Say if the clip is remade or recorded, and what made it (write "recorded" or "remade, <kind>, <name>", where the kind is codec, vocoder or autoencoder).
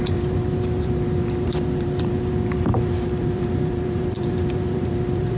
remade, vocoder, BigVGAN v2